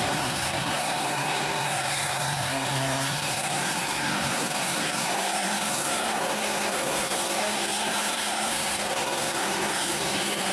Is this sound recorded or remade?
remade